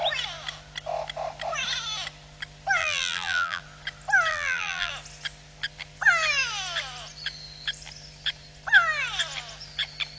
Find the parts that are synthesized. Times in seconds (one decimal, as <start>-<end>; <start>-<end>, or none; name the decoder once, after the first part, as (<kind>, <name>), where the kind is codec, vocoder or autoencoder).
2.8-3.6 (vocoder, BigVGAN v2); 4.3-4.9